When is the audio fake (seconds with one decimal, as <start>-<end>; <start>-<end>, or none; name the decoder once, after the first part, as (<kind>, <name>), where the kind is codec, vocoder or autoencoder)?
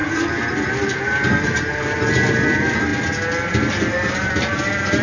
none